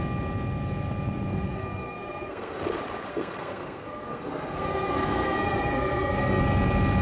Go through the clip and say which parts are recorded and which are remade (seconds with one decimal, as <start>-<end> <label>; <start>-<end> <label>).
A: 0.0-1.3 recorded; 1.3-2.6 remade; 2.6-3.1 recorded; 3.1-6.4 remade; 6.4-7.0 recorded